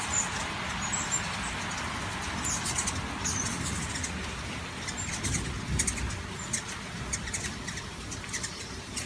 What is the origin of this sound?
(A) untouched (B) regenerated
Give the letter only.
A